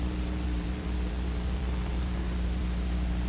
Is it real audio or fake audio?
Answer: fake